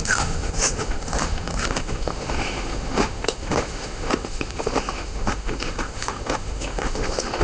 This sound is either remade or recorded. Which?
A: remade